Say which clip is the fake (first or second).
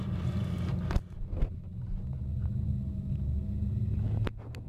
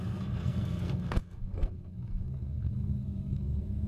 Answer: second